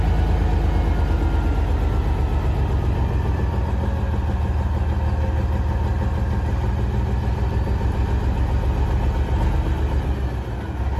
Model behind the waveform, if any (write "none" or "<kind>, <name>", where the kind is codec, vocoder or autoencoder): none